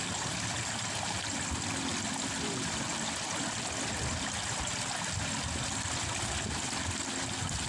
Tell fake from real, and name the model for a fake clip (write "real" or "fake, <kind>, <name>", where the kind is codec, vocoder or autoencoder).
real